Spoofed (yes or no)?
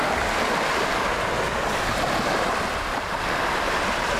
no